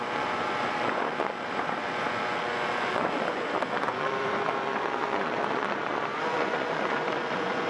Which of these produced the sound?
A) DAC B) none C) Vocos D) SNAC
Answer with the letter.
C